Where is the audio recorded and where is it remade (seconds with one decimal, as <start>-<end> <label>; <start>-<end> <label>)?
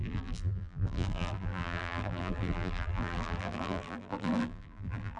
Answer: 0.0-5.2 remade